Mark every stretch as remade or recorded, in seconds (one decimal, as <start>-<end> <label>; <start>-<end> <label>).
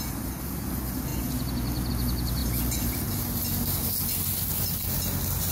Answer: 0.0-5.5 recorded